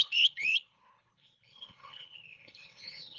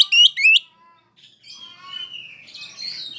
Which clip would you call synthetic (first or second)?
first